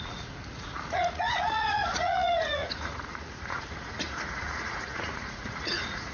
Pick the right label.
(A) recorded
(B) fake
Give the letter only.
B